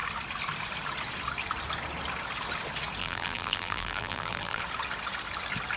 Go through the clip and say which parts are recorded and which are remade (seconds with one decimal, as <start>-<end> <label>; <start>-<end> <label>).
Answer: 0.0-3.0 recorded; 3.0-4.6 remade; 4.6-5.8 recorded